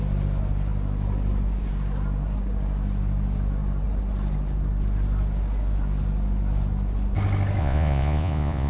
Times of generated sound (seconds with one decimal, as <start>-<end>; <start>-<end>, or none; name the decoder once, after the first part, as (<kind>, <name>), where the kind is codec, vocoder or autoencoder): 7.6-8.7 (vocoder, Vocos)

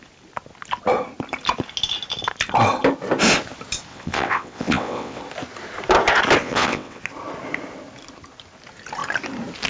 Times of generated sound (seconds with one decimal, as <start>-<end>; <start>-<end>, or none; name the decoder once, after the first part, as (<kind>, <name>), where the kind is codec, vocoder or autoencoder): 3.9-5.2 (vocoder, WaveNeXt); 6.4-7.0